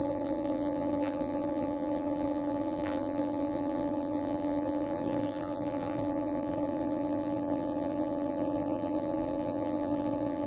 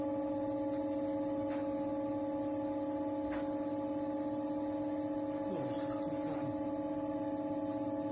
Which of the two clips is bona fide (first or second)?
second